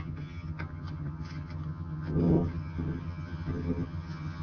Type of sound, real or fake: fake